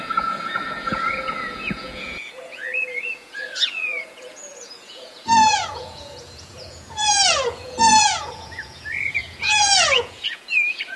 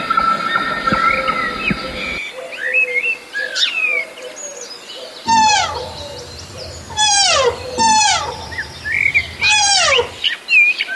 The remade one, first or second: first